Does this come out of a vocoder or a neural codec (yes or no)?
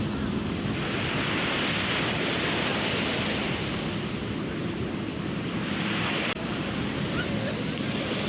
no